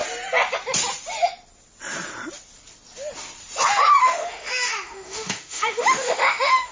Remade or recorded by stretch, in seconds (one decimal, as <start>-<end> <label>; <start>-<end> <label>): 0.0-4.0 recorded; 4.0-6.7 remade